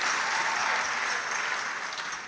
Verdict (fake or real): real